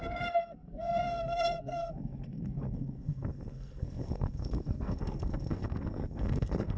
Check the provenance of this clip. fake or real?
fake